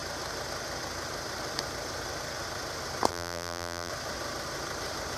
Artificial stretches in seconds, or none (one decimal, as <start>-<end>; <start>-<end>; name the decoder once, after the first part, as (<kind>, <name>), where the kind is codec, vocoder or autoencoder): 3.1-3.9 (vocoder, BigVGAN v2)

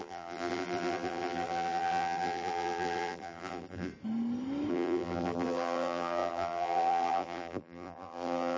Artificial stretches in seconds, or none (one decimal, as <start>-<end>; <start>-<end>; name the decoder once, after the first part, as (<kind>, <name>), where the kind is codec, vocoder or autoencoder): 0.0-3.9 (vocoder, BigVGAN v2); 4.7-8.6

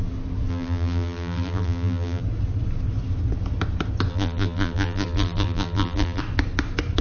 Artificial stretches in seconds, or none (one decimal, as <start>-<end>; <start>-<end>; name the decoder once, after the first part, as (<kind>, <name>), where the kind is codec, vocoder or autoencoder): 0.5-2.2 (vocoder, BigVGAN v2); 4.1-6.2

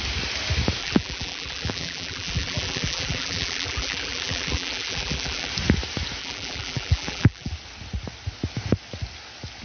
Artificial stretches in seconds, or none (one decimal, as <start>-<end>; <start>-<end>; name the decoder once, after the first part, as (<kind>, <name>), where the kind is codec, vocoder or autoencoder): 0.8-5.5 (vocoder, BigVGAN v2); 6.2-7.5

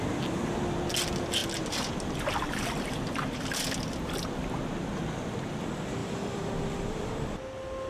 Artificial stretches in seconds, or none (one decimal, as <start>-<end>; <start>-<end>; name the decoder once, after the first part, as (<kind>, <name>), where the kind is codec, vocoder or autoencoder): 1.4-4.5 (vocoder, BigVGAN v2); 6.0-7.1